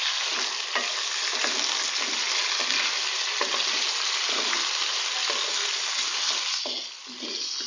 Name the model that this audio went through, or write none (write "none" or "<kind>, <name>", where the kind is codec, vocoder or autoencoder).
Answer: none